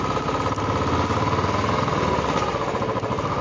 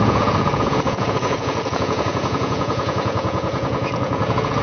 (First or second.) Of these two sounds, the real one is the first